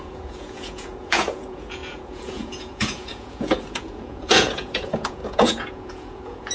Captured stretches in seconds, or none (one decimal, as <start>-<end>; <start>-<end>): none